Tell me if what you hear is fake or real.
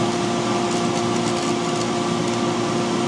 real